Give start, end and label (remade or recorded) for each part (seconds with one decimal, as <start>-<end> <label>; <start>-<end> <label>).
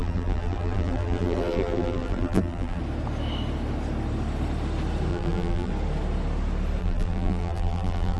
0.0-2.8 remade; 2.8-5.1 recorded; 5.1-5.7 remade; 5.7-6.8 recorded; 6.8-8.2 remade